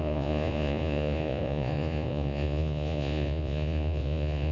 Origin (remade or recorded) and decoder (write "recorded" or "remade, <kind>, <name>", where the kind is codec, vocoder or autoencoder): remade, vocoder, Vocos